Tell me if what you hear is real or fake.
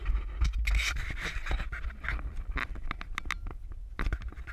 real